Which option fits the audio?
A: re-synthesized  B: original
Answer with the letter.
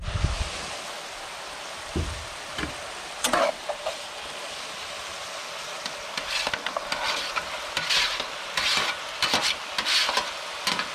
B